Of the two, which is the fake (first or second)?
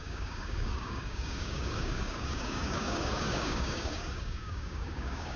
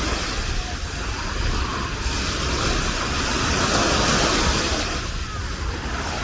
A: first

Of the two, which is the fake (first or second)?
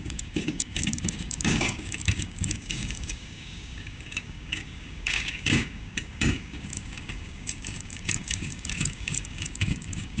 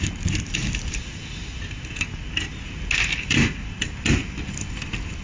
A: first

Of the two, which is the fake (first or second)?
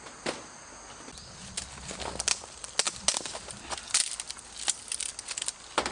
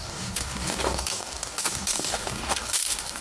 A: second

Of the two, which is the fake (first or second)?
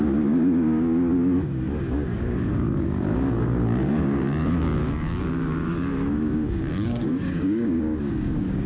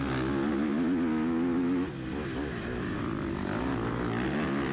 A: first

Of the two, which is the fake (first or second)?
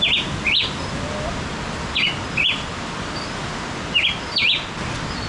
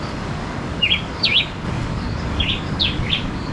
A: second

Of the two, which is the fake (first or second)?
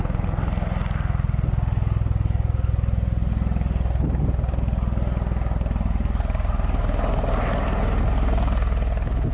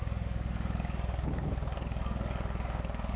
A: second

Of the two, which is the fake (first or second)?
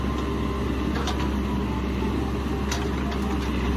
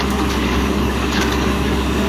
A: second